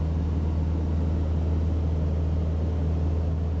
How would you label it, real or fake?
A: real